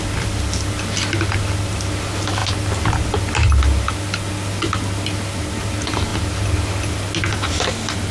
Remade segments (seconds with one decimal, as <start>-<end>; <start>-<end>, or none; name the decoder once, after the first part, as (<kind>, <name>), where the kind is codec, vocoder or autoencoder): none